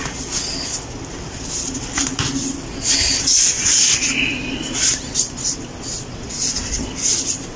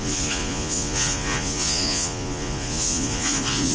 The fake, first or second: second